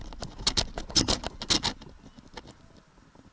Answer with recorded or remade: recorded